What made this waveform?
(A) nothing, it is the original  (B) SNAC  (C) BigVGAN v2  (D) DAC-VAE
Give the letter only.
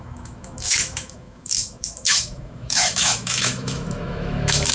D